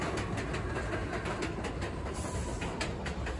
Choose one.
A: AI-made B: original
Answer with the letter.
B